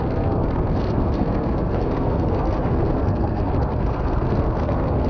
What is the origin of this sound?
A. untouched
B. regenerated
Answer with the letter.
B